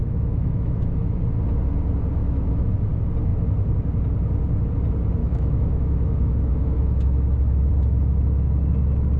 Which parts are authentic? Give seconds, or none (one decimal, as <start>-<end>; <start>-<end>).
1.2-2.2; 2.7-5.2; 7.7-9.2